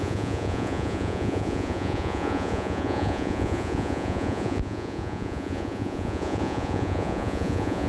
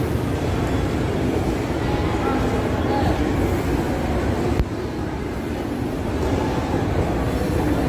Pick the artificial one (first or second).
first